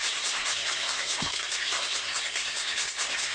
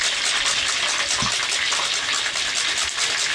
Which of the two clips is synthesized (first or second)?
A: first